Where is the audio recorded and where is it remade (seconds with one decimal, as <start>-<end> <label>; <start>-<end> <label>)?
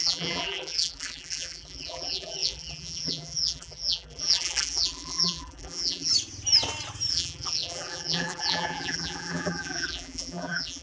0.0-6.1 remade; 6.1-7.1 recorded; 7.1-10.8 remade